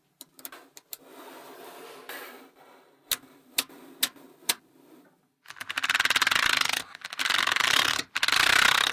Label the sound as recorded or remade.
recorded